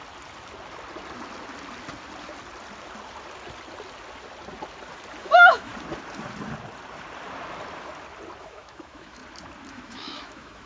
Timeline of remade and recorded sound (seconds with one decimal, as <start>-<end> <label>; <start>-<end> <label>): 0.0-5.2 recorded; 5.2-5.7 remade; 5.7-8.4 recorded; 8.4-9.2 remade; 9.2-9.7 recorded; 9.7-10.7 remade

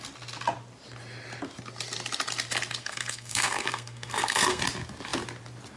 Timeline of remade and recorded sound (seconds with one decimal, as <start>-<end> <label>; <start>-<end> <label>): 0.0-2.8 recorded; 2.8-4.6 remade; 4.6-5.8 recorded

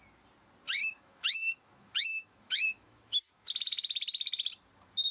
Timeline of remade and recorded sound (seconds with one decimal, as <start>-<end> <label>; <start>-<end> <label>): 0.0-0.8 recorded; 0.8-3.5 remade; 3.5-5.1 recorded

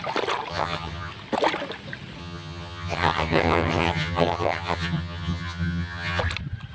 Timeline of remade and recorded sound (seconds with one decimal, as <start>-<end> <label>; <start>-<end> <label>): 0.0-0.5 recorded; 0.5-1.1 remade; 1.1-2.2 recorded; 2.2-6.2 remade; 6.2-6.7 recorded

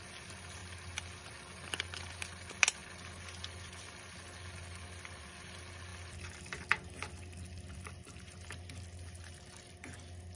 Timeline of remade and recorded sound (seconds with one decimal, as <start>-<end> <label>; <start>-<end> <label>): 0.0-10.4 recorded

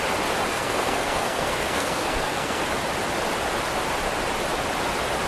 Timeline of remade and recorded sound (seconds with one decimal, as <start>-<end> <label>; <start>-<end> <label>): 0.0-0.5 recorded; 0.5-2.6 remade; 2.6-5.3 recorded